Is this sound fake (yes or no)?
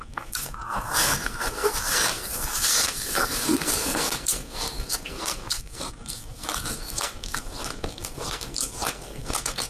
yes